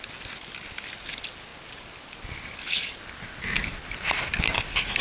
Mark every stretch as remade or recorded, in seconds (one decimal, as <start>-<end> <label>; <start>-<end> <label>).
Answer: 0.0-5.0 recorded